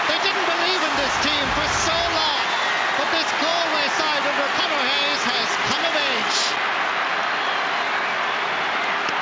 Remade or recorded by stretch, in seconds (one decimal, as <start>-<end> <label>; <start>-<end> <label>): 0.0-9.2 recorded